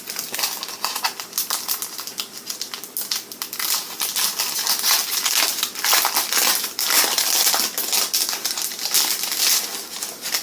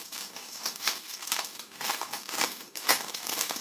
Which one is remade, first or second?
second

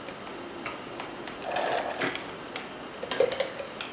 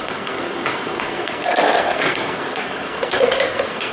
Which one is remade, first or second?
second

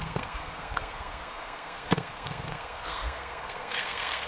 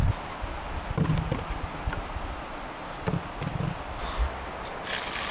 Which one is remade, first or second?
first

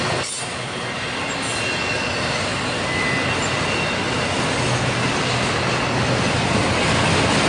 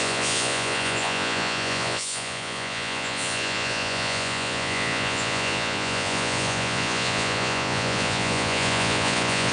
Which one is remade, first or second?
second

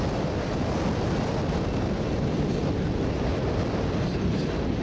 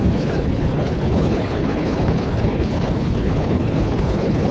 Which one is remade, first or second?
second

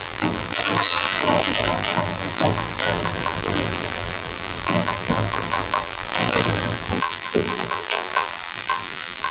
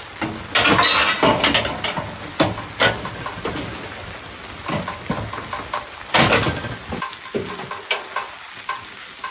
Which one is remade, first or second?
first